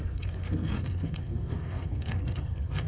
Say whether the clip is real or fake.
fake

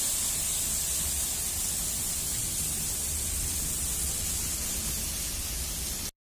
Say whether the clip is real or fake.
real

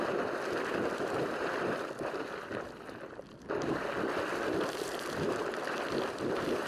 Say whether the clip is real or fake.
real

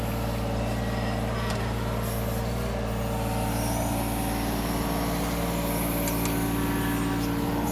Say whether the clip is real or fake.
real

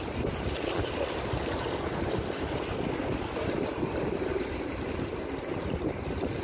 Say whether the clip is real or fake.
real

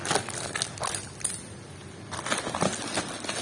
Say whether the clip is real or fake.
real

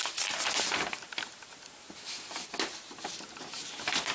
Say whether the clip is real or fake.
real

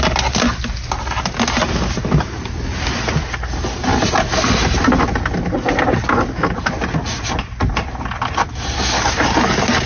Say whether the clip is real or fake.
real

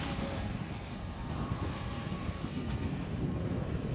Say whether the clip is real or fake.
fake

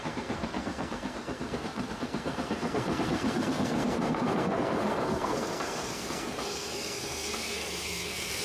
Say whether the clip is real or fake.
fake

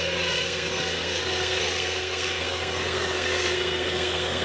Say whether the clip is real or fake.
fake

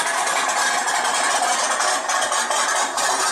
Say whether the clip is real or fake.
real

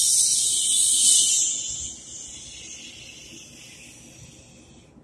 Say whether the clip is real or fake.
real